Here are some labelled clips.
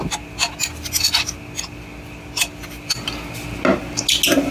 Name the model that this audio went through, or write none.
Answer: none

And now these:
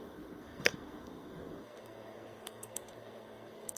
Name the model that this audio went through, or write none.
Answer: codec, SNAC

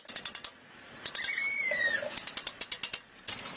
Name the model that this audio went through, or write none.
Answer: none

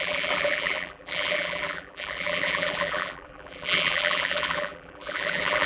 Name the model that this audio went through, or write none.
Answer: vocoder, BigVGAN v2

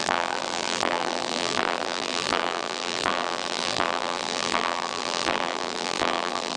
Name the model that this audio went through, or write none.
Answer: vocoder, BigVGAN v2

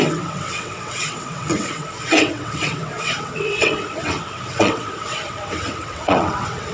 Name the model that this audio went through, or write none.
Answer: vocoder, WaveNeXt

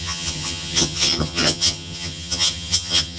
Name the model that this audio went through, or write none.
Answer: vocoder, HiFi-GAN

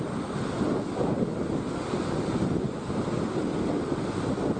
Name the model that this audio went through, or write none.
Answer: none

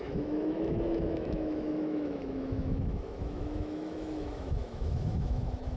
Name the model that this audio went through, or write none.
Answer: autoencoder, DAC-VAE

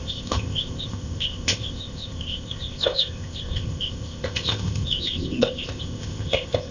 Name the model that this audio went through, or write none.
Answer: codec, ZipCodec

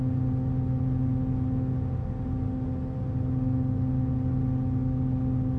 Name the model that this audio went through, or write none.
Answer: none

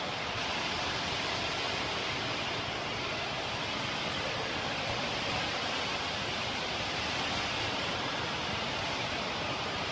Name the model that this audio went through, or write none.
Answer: vocoder, BigVGAN v2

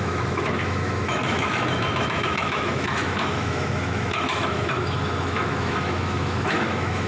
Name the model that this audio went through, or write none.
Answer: autoencoder, DAC-VAE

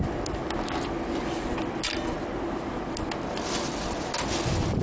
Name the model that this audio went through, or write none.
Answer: none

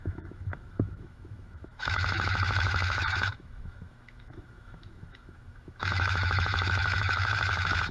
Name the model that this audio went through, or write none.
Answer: autoencoder, DAC-VAE